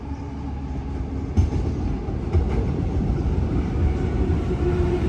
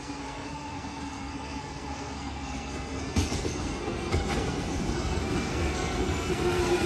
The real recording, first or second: first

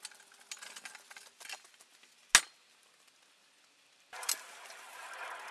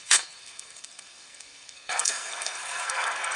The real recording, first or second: first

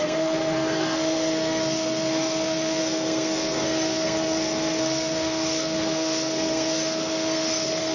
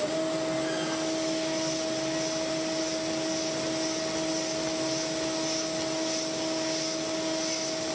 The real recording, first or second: second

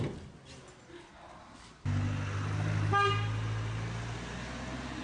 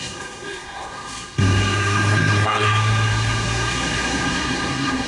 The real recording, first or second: first